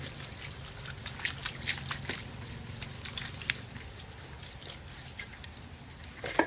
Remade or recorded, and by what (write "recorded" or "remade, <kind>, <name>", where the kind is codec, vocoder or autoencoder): recorded